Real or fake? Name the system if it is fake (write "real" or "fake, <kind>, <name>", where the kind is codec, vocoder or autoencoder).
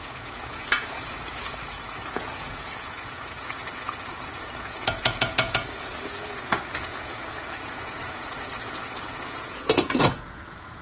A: fake, vocoder, Vocos